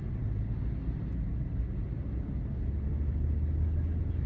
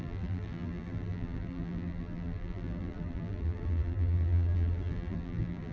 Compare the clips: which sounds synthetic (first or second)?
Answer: second